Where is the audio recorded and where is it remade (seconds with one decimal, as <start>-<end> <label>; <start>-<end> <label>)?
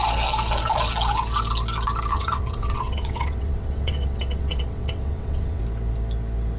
0.0-2.1 recorded; 2.1-5.6 remade; 5.6-6.6 recorded